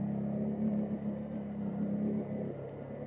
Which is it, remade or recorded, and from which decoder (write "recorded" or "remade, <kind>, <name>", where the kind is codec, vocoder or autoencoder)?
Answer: recorded